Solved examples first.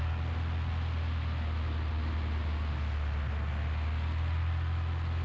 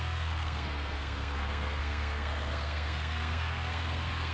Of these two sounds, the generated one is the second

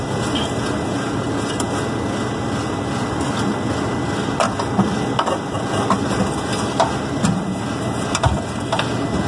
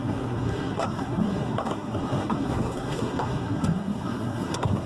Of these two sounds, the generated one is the second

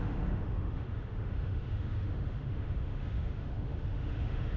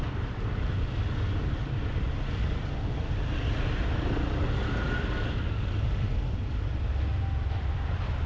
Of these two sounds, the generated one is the first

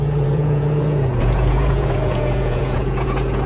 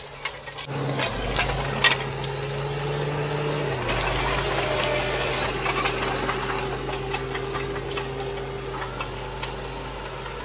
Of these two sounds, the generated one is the first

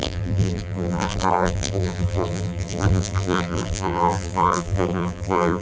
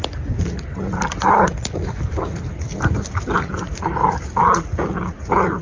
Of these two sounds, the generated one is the first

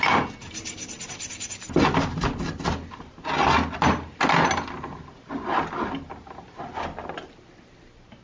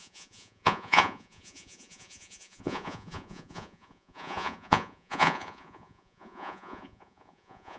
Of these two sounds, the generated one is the second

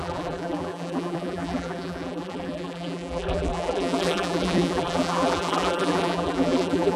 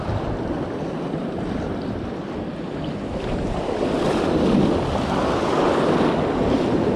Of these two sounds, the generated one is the first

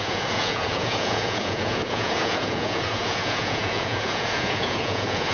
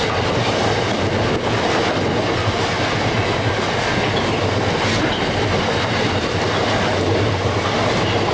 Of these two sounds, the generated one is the first